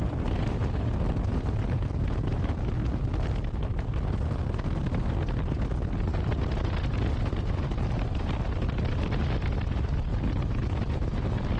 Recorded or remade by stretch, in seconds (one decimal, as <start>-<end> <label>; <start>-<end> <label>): 0.0-11.6 recorded